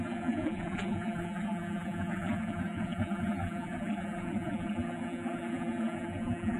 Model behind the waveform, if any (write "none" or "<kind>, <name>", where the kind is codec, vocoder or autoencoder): vocoder, BigVGAN v2